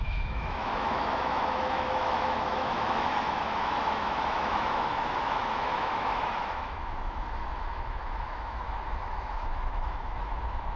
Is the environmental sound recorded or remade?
remade